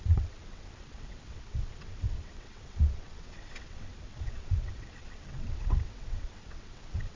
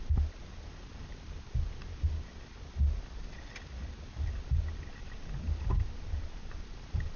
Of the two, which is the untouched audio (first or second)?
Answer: second